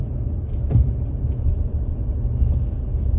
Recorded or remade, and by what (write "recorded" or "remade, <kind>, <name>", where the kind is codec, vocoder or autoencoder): recorded